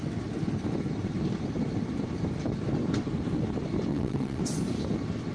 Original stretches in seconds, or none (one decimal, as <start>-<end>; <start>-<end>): 0.0-3.9; 4.4-5.3